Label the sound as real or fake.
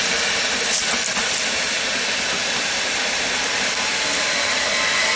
real